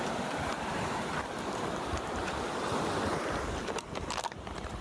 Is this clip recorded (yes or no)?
yes